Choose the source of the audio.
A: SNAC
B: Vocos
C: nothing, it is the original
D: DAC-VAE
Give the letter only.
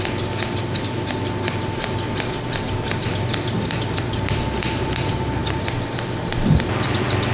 C